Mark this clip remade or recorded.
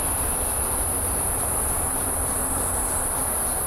recorded